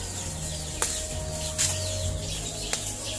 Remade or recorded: recorded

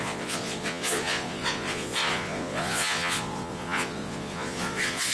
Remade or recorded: remade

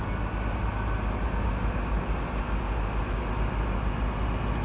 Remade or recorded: recorded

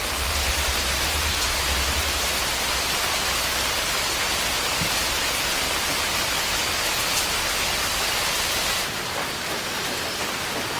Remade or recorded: recorded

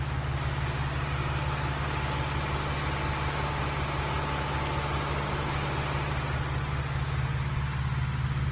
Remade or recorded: recorded